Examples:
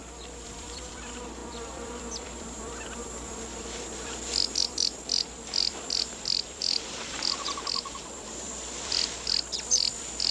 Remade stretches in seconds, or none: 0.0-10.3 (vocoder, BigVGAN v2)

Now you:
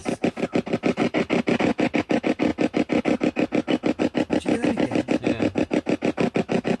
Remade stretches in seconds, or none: 0.7-2.5 (vocoder, BigVGAN v2)

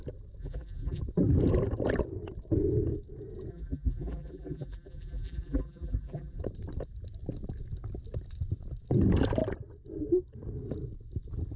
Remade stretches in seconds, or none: 0.4-1.0 (vocoder, BigVGAN v2); 3.5-6.4

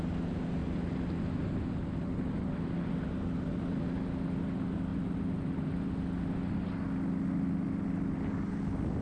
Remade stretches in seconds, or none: none

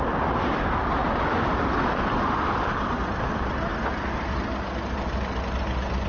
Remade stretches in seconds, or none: 0.0-3.7 (vocoder, BigVGAN v2)

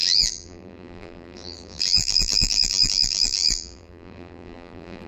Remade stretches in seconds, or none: 0.0-5.1 (vocoder, BigVGAN v2)